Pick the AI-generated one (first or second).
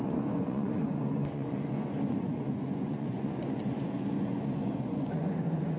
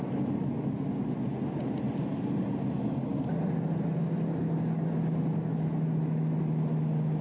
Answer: first